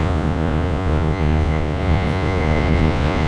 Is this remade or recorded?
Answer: remade